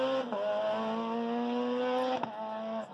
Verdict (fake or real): real